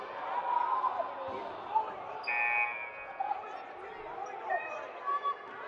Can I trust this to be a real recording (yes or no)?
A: yes